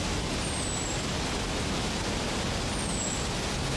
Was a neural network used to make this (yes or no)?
no